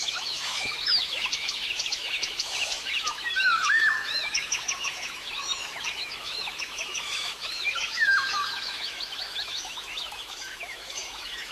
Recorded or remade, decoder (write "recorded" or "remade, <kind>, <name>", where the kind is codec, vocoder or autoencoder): remade, autoencoder, DAC-VAE